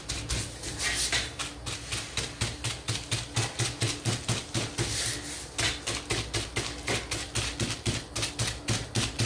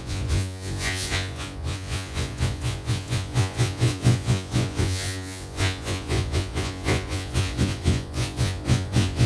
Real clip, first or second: first